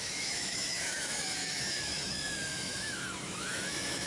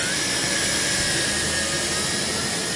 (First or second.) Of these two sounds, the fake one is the first